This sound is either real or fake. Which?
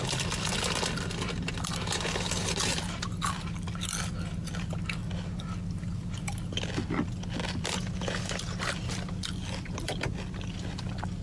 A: real